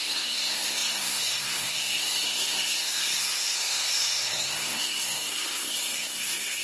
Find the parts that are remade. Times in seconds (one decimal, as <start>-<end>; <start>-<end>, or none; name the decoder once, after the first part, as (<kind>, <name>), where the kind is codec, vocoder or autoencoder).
0.0-6.6 (codec, SNAC)